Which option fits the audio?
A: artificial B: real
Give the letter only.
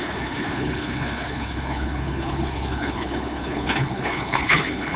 A